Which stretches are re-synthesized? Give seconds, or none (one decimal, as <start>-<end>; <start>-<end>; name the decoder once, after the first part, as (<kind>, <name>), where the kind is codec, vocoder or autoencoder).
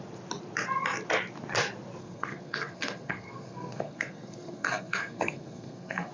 2.0-6.1 (codec, SNAC)